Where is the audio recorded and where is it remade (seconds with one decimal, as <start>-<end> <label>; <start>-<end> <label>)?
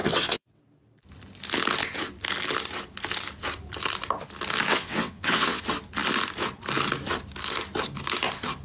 0.0-0.6 remade; 0.6-4.7 recorded; 4.7-5.6 remade; 5.6-8.6 recorded